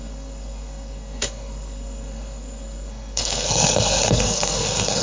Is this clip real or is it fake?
fake